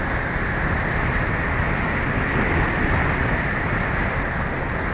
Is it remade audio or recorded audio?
recorded